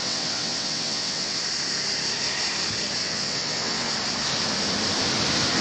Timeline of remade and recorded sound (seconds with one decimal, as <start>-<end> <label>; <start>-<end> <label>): 0.0-1.4 remade; 1.4-3.0 recorded; 3.0-3.9 remade; 3.9-5.6 recorded